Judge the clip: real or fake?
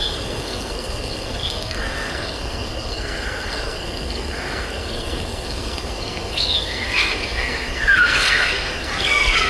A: fake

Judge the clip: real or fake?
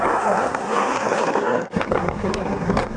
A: fake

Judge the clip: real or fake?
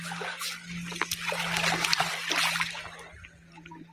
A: real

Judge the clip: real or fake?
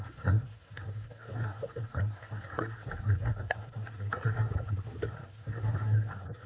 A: fake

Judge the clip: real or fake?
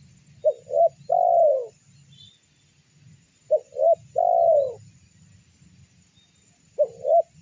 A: real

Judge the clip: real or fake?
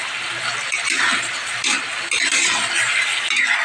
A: real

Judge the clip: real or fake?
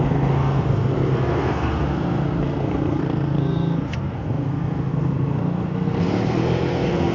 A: fake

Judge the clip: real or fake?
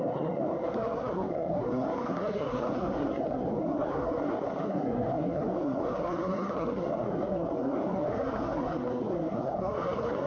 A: fake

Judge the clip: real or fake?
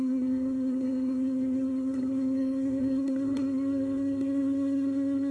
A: fake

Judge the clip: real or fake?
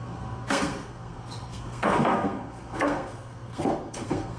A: fake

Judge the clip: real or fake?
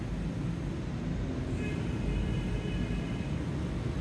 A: real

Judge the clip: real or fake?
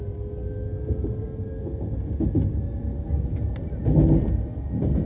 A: real